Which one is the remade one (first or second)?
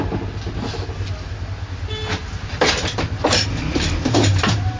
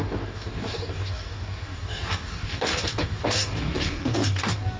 second